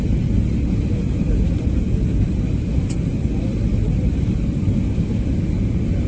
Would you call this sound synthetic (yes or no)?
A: no